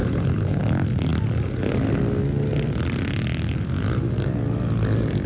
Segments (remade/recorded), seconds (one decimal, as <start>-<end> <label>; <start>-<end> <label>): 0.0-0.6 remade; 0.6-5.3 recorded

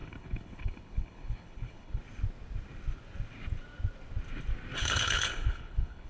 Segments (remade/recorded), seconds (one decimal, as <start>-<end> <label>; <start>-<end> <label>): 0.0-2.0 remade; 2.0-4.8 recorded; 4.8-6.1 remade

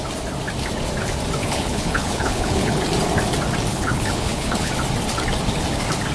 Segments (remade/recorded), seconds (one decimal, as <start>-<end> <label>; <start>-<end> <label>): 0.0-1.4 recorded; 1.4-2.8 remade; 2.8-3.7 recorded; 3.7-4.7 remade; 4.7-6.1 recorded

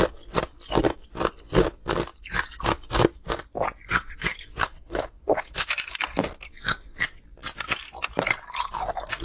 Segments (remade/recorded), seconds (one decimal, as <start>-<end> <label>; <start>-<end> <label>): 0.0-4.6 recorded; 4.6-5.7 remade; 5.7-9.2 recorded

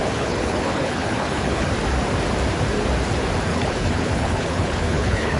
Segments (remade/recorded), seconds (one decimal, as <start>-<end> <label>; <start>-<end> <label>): 0.0-1.7 remade; 1.7-3.5 recorded; 3.5-5.4 remade